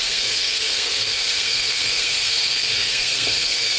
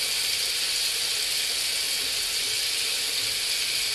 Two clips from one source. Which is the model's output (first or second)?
first